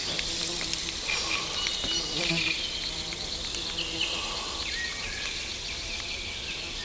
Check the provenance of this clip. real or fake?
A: real